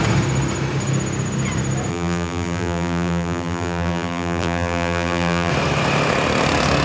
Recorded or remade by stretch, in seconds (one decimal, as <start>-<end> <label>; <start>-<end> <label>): 0.0-1.9 recorded; 1.9-5.5 remade; 5.5-6.8 recorded